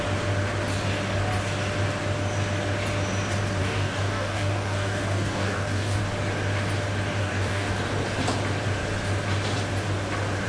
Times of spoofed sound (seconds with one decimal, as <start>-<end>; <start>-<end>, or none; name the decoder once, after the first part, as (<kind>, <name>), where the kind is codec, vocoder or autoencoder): 3.6-6.0 (codec, DAC); 7.2-7.7